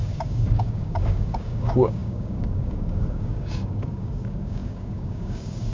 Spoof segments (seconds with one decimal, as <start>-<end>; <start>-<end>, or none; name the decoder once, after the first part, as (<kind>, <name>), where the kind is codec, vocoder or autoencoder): 0.0-5.7 (codec, DAC)

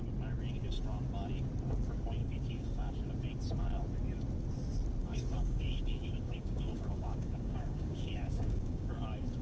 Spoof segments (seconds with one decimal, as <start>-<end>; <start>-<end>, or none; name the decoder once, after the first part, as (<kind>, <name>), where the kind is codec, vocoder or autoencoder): 2.2-2.9 (codec, DAC); 5.0-9.4

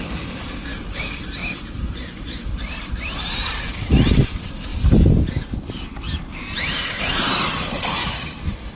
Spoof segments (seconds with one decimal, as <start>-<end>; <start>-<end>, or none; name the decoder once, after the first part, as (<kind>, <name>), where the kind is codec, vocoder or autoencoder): none

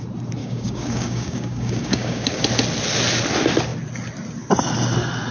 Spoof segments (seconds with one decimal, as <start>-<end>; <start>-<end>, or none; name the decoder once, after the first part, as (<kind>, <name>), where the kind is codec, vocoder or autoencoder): 0.4-2.4 (codec, DAC)

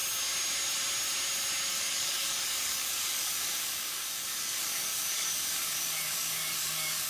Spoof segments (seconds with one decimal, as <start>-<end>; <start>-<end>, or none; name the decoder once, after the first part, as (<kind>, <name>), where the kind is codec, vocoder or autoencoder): 1.7-7.1 (codec, DAC)

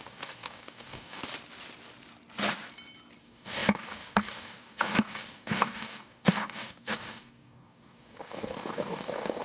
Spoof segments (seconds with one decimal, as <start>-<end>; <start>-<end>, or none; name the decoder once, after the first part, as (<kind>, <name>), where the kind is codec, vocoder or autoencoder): 0.0-1.2 (codec, DAC); 3.2-9.4

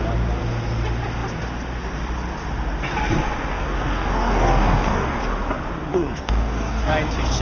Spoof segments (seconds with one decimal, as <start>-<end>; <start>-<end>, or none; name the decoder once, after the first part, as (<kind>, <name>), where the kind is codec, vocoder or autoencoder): 3.5-5.2 (codec, DAC); 5.9-6.9